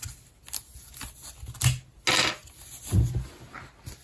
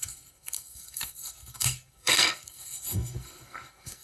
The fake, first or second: second